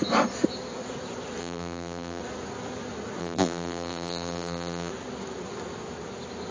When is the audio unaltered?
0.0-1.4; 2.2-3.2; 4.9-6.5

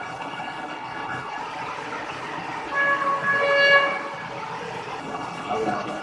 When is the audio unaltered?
1.4-5.0

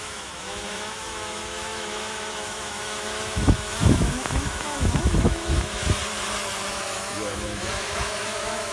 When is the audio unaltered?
6.0-6.7